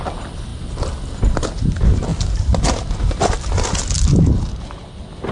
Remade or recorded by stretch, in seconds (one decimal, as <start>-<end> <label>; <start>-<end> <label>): 0.0-5.3 recorded